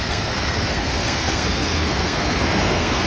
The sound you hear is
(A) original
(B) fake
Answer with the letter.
B